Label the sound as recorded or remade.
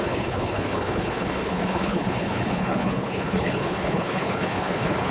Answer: remade